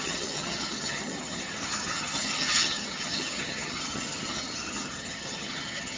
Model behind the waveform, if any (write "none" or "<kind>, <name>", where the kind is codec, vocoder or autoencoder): vocoder, HiFi-GAN